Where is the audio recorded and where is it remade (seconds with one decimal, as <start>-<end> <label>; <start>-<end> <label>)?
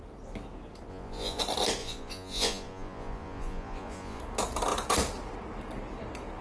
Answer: 0.0-0.9 recorded; 0.9-1.4 remade; 1.4-1.8 recorded; 1.8-4.2 remade; 4.2-6.4 recorded